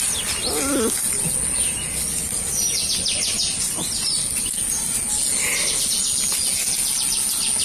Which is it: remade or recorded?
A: recorded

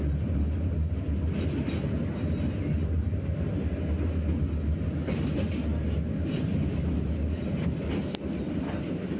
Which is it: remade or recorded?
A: recorded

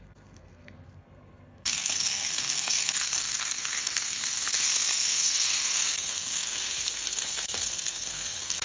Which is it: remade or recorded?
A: remade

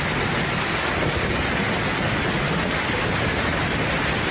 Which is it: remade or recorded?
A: recorded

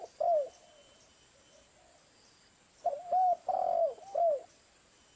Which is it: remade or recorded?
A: recorded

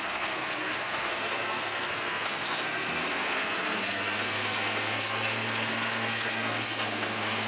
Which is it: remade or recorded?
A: remade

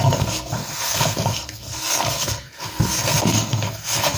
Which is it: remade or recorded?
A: remade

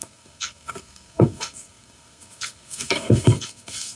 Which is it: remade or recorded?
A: remade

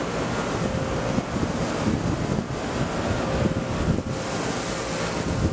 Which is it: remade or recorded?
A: recorded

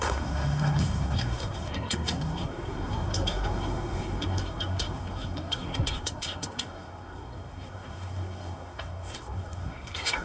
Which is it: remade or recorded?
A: remade